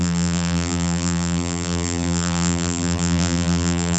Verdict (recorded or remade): remade